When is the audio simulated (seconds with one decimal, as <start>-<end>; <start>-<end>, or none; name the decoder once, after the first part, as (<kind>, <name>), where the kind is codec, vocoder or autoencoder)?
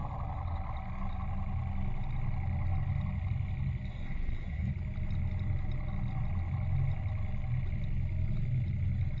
3.9-4.7 (codec, SNAC)